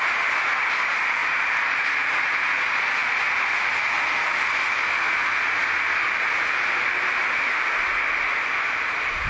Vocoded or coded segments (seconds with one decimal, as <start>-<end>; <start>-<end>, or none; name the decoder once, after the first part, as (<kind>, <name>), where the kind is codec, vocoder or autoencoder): none